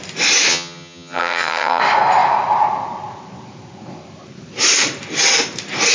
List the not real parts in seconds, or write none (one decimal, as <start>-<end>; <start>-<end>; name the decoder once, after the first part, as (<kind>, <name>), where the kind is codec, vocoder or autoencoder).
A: 0.5-1.8 (vocoder, HiFi-GAN)

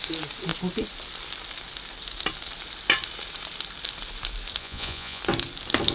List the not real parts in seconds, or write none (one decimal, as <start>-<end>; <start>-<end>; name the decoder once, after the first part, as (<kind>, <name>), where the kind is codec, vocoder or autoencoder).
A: 4.6-5.2 (vocoder, Vocos)

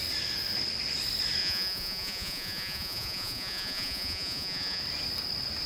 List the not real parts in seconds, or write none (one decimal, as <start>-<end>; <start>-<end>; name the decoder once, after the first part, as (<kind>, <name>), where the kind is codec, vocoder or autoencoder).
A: 1.4-4.8 (vocoder, Vocos)